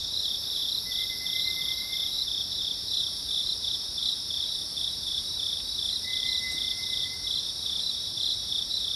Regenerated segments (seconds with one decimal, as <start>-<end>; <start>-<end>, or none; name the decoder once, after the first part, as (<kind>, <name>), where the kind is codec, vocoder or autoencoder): 0.0-0.6 (vocoder, BigVGAN v2); 2.5-4.0; 4.9-9.0